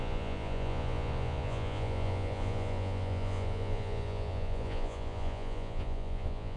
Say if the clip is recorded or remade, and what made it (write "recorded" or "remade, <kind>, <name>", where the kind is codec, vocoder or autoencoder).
remade, vocoder, Vocos